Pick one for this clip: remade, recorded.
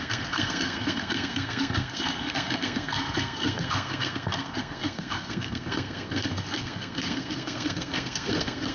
remade